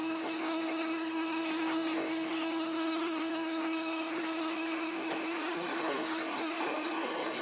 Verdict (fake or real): fake